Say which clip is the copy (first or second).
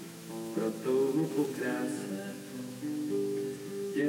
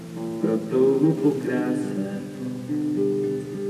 first